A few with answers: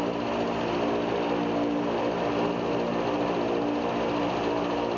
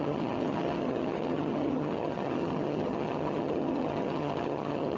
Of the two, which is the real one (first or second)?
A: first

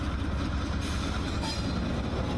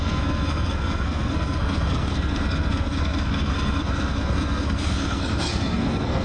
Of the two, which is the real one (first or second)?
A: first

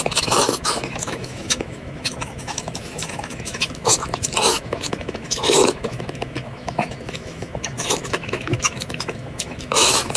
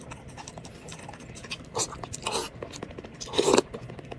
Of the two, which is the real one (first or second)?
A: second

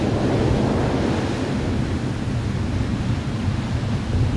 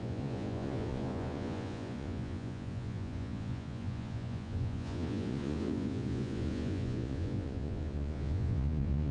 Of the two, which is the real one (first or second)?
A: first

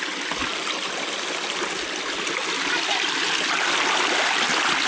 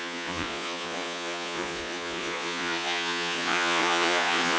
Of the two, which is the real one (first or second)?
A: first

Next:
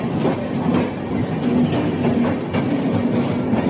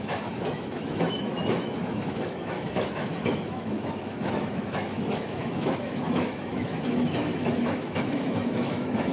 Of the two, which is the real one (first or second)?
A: first